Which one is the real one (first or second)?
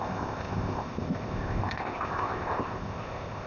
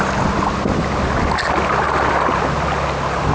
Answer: second